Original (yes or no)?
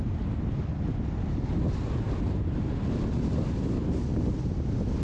yes